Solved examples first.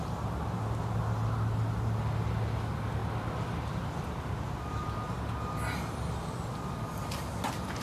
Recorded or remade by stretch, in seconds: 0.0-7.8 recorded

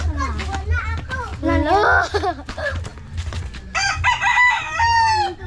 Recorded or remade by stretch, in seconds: 0.0-5.5 recorded

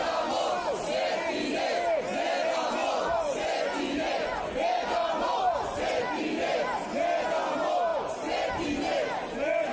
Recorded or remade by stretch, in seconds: 0.0-2.8 recorded; 2.8-5.8 remade; 5.8-9.7 recorded

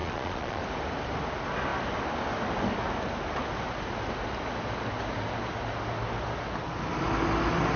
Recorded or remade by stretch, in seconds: 0.0-0.6 remade; 0.6-7.8 recorded

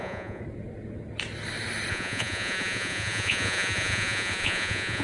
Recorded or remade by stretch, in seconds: 0.0-0.4 remade; 0.4-1.9 recorded; 1.9-5.0 remade

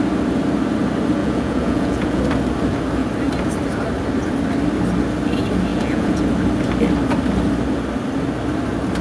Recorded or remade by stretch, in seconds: 0.0-1.2 recorded; 1.2-2.2 remade; 2.2-5.7 recorded; 5.7-6.2 remade; 6.2-9.0 recorded

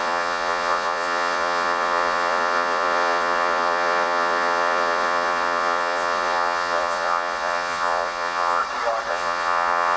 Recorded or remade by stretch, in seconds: 0.0-8.6 remade; 8.6-9.1 recorded; 9.1-10.0 remade

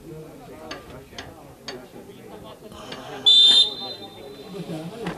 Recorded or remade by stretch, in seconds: 0.0-5.2 recorded